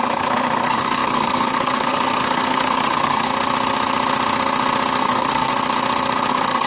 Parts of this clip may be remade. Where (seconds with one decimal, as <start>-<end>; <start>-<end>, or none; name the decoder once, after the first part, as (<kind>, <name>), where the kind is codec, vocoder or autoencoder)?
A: 0.0-3.3 (codec, SNAC); 5.0-5.5; 6.3-6.7

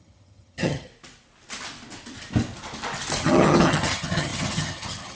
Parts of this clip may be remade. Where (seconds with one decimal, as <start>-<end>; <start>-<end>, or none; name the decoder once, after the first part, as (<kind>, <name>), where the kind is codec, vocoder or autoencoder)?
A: 0.0-0.9 (vocoder, HiFi-GAN); 3.2-5.2